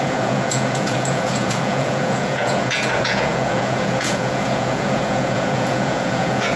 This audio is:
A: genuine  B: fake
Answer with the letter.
B